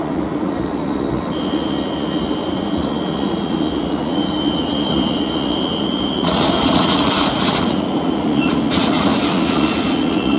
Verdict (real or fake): fake